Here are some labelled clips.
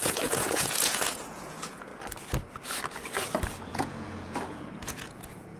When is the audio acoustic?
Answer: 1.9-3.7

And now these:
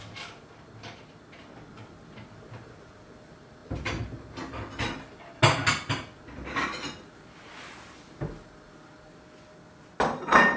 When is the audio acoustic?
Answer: 0.0-10.6

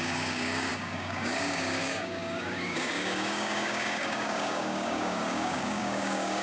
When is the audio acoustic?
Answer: none